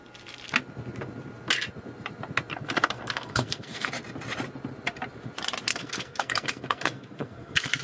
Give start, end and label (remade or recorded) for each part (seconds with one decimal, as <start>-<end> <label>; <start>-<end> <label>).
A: 0.0-2.5 recorded; 2.5-3.9 remade; 3.9-5.7 recorded; 5.7-7.8 remade